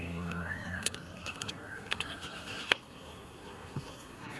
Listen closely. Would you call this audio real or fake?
fake